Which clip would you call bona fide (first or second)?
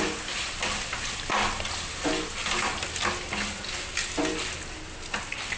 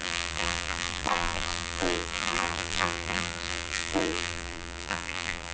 first